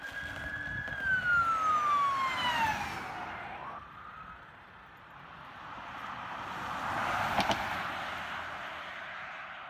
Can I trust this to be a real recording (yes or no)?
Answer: yes